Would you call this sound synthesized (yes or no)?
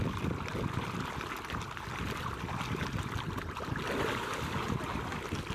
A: no